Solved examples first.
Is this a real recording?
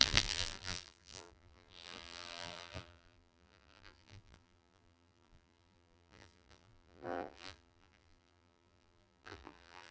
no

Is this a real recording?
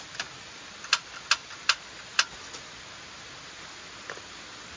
yes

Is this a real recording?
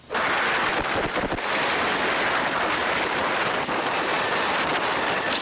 yes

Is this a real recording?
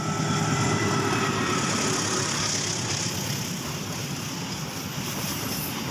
yes